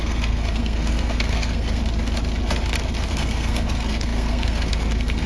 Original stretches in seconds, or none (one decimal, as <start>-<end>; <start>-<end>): 1.8-3.1